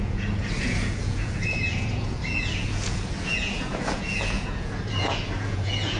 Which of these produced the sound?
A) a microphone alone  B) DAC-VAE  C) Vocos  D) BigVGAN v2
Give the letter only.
C